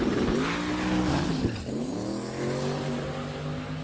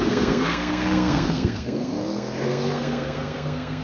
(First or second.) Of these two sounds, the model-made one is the second